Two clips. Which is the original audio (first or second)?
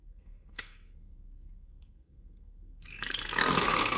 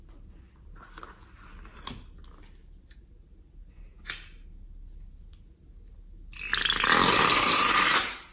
second